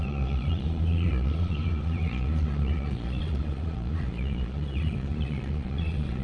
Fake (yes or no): yes